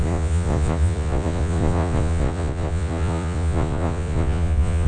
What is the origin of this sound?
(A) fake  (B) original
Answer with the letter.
A